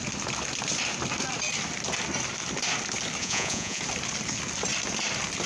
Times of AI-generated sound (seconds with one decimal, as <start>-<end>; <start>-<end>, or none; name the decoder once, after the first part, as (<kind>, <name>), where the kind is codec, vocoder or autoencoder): 3.2-3.8 (vocoder, Vocos)